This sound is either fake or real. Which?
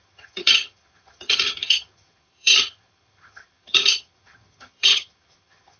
fake